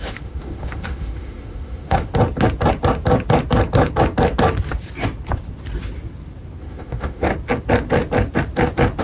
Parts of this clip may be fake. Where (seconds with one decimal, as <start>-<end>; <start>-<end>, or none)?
0.0-2.1; 6.6-7.3